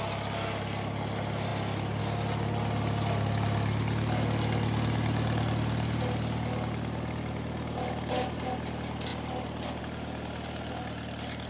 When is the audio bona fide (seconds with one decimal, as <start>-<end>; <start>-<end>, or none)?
0.0-11.5

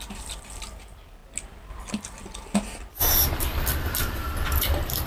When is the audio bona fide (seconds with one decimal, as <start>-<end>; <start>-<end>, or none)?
1.2-3.4

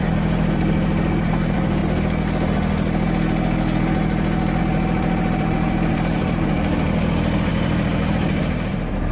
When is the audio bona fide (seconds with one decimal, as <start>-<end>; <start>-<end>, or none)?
1.8-4.6